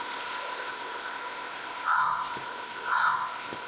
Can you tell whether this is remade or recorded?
remade